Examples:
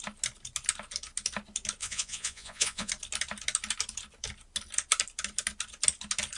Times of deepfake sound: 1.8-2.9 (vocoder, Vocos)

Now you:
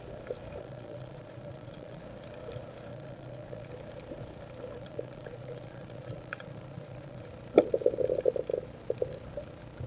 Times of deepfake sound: 0.6-2.0 (vocoder, Vocos); 2.9-3.7; 4.8-7.3

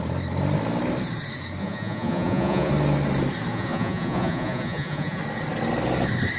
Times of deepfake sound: 1.6-2.7 (vocoder, Vocos); 3.5-5.2

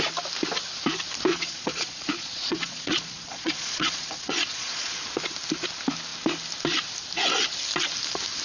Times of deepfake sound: 1.3-5.0 (vocoder, Vocos)

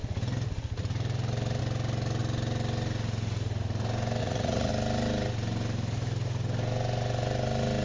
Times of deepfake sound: 4.2-4.7 (vocoder, Vocos)

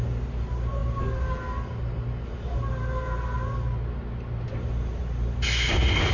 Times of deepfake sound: none

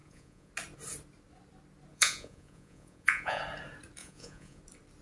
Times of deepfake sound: 0.0-0.5 (vocoder, Vocos); 1.9-3.4; 4.0-4.6